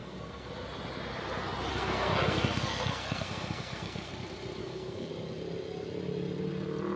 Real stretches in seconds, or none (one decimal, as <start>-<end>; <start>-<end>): 0.5-1.7; 4.1-4.6; 5.1-7.0